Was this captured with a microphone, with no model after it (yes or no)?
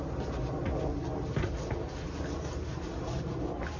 yes